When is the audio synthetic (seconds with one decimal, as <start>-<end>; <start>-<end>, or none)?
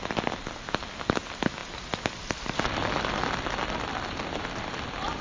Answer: none